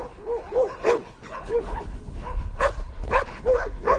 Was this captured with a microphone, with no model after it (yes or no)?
no